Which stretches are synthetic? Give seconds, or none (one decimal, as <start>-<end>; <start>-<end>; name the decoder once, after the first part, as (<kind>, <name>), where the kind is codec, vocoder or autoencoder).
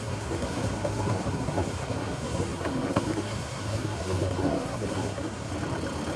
0.0-5.5 (codec, SNAC)